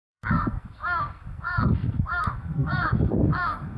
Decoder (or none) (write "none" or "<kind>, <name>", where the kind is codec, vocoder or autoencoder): codec, SNAC